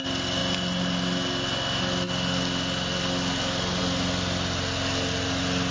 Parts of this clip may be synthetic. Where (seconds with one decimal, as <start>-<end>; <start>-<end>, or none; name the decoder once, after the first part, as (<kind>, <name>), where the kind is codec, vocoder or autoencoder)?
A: none